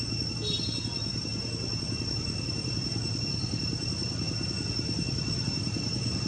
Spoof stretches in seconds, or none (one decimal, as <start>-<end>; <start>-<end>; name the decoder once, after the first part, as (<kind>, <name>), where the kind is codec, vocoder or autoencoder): none